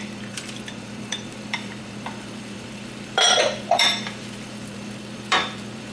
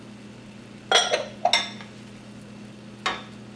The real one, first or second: second